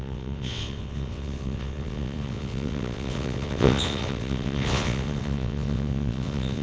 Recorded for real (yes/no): no